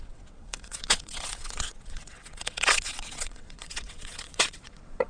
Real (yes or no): no